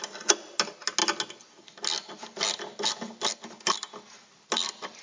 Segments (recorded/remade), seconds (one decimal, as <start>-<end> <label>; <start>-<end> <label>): 0.0-5.0 recorded